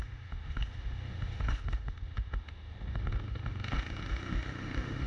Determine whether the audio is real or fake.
fake